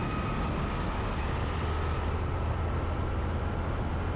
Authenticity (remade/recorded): recorded